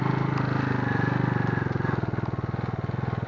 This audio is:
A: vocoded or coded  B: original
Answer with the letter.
B